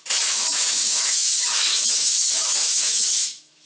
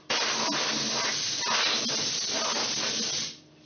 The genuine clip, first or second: second